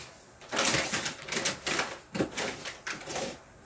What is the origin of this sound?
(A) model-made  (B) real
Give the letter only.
B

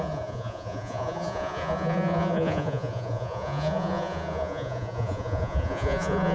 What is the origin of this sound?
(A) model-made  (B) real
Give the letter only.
A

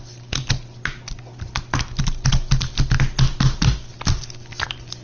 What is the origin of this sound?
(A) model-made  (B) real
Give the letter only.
B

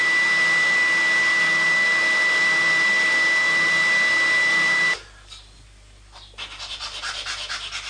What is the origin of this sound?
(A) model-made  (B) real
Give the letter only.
B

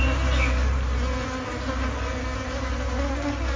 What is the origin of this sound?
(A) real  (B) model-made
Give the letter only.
A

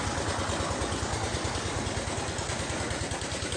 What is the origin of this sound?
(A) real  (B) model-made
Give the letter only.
A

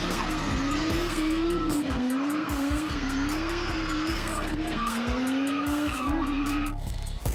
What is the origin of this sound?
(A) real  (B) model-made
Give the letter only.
B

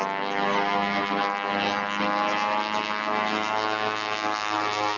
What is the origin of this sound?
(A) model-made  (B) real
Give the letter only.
B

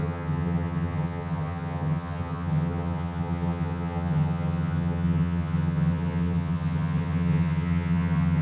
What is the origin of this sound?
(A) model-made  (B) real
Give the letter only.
A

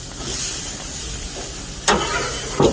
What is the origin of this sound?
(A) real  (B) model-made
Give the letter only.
A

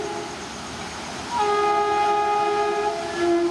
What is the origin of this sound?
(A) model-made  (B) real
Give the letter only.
B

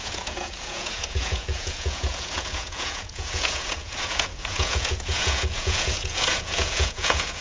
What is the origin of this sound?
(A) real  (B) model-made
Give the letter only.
B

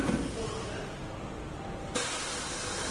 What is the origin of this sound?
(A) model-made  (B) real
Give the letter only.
B